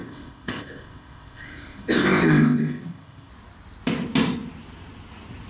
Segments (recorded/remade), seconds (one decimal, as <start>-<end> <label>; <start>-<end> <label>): 0.0-3.3 remade; 3.3-5.5 recorded